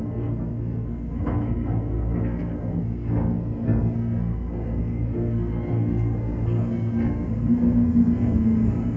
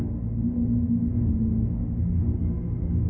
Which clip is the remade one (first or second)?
first